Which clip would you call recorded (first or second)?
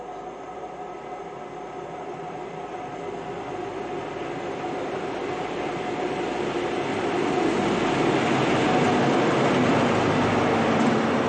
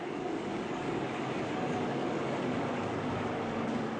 first